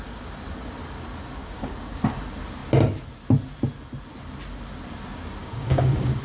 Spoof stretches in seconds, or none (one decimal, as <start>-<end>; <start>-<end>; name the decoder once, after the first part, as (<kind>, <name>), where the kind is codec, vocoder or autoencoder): 1.4-2.0 (codec, DAC); 5.4-6.2